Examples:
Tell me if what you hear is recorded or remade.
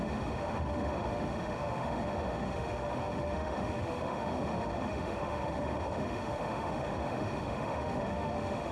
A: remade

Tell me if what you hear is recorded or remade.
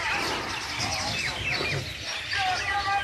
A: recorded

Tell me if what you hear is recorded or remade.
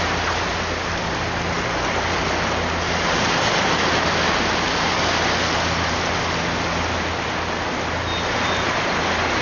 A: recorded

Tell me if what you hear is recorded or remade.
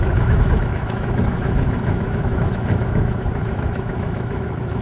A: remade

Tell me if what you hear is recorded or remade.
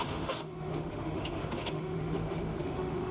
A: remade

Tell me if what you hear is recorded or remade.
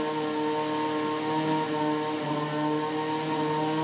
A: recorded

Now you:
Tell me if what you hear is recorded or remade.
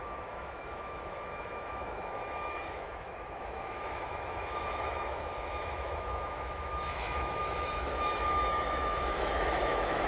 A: remade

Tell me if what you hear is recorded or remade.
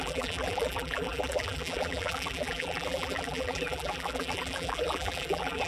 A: remade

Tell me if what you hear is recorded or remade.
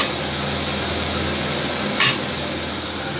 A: recorded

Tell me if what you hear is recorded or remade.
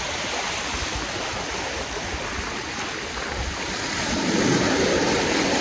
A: recorded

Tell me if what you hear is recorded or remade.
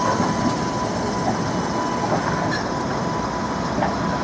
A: recorded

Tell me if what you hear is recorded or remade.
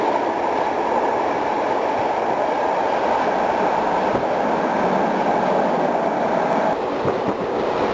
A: recorded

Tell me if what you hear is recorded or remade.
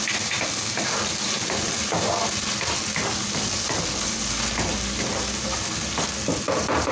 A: recorded